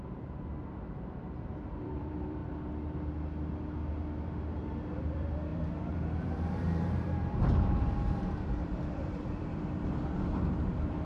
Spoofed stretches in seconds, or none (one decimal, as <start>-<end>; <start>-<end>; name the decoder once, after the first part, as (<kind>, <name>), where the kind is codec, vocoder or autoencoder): 0.0-0.5 (vocoder, BigVGAN v2); 1.7-2.4; 4.9-11.1